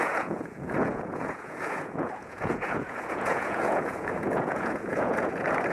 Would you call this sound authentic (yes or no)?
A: no